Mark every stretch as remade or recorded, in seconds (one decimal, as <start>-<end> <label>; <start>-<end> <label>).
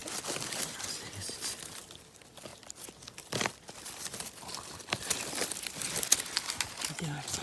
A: 0.0-7.4 recorded